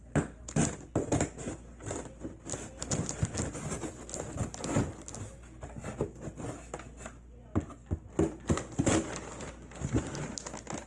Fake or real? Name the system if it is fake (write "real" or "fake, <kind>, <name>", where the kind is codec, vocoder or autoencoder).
real